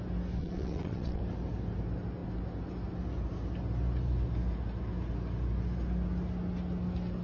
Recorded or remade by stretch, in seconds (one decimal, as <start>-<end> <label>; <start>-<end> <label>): 0.0-0.4 recorded; 0.4-1.2 remade; 1.2-7.2 recorded